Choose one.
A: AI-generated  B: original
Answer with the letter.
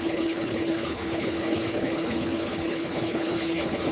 A